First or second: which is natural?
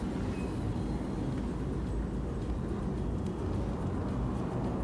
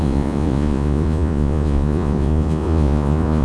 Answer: first